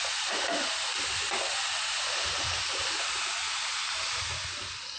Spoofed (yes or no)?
no